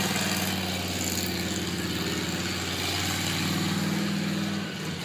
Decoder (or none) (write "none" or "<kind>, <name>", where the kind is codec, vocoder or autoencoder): none